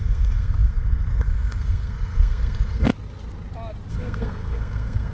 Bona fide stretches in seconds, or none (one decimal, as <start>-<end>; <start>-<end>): 2.9-3.9